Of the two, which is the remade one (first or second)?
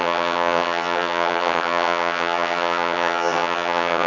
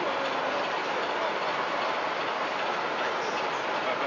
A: first